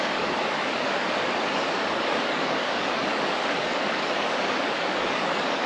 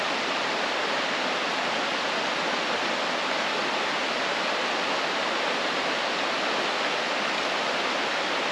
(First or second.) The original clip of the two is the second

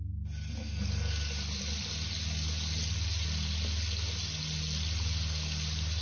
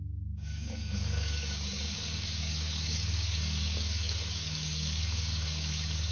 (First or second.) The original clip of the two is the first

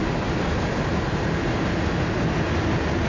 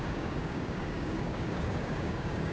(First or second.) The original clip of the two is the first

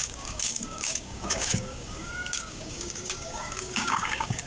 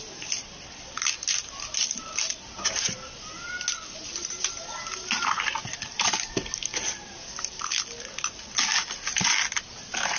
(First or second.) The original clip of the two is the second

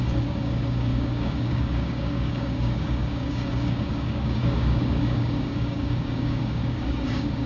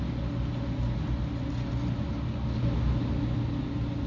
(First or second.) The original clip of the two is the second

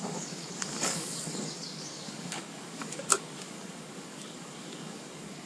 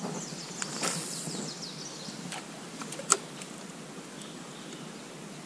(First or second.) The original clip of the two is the second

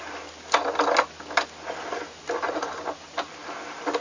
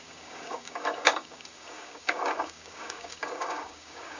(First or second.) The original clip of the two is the first